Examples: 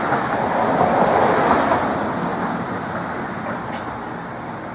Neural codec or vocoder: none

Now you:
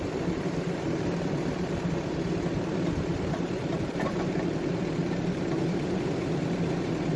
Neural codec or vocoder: vocoder, BigVGAN v2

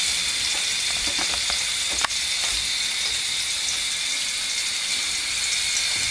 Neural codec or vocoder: none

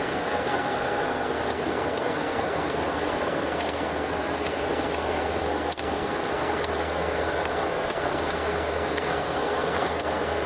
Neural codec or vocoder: codec, SNAC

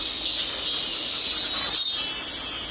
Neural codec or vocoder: none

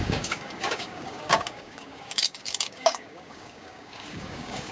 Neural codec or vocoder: codec, DAC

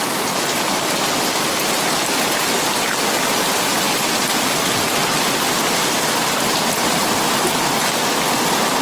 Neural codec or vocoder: none